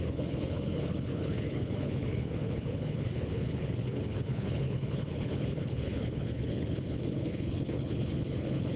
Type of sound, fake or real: fake